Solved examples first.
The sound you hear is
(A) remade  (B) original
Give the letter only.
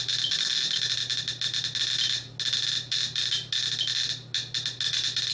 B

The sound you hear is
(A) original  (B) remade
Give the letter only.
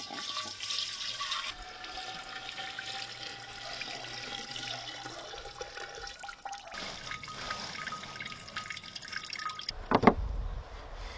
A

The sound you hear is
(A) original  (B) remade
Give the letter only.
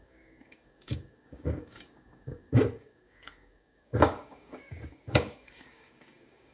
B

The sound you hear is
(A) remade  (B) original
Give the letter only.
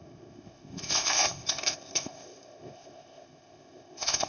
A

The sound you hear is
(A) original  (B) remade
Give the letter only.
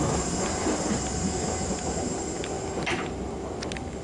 A